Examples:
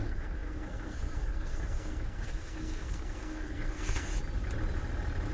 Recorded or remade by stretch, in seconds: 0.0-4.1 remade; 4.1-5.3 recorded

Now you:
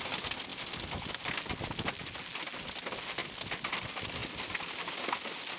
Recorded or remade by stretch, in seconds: 0.0-5.6 recorded

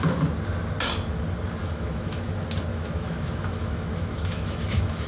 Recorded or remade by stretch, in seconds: 0.0-1.6 recorded; 1.6-2.2 remade; 2.2-2.7 recorded; 2.7-5.1 remade

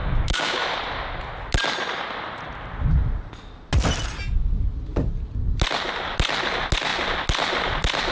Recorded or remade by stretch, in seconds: 0.0-0.6 remade; 0.6-8.1 recorded

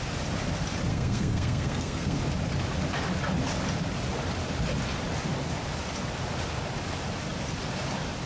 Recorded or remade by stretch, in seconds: 0.0-0.9 recorded; 0.9-2.2 remade; 2.2-8.3 recorded

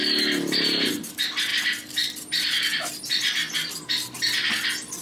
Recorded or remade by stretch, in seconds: 0.0-1.5 recorded; 1.5-4.5 remade; 4.5-5.0 recorded

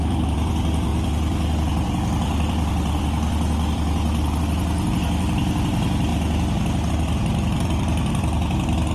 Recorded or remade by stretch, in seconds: 0.0-6.1 remade; 6.1-6.9 recorded; 6.9-8.9 remade